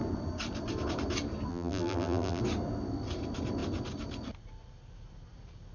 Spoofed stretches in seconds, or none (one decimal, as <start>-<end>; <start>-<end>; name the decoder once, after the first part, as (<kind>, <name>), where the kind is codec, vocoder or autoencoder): 1.5-2.4 (vocoder, BigVGAN v2)